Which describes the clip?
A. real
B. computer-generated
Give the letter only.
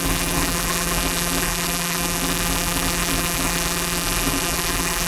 B